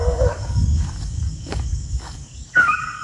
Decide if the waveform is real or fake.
fake